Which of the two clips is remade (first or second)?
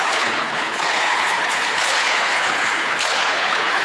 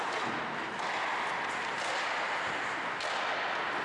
first